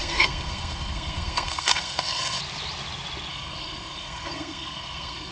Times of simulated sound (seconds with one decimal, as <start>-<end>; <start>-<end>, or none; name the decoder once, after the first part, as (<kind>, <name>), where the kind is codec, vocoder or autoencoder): 0.0-2.4 (codec, SNAC); 3.3-5.3